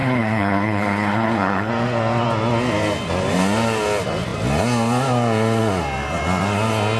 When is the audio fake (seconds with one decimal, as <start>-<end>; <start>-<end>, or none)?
0.0-1.7